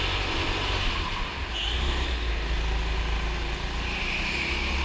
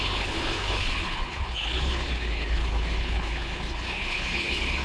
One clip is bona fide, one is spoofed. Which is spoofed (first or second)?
second